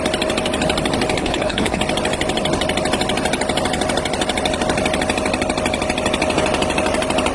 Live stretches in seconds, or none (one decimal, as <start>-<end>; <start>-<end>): 0.0-1.2; 1.8-7.3